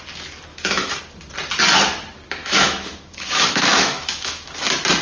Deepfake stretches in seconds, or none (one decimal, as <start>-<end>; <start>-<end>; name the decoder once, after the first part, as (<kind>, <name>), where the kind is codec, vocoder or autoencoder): 0.5-1.0 (autoencoder, DAC-VAE); 2.4-4.5